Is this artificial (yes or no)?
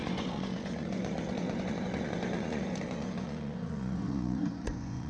yes